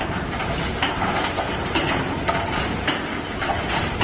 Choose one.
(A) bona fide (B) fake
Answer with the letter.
B